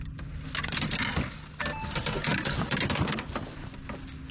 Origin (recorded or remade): recorded